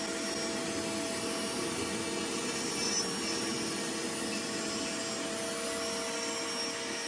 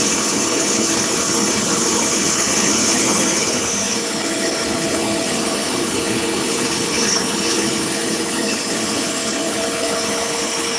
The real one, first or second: first